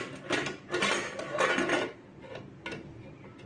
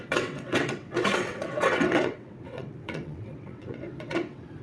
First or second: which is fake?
second